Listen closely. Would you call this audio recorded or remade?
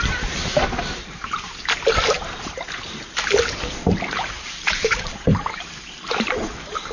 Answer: remade